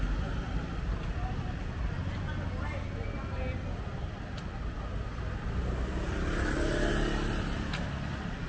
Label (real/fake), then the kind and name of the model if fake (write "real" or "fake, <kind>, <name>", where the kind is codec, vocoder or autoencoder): real